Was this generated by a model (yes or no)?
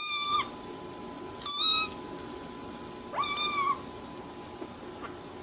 no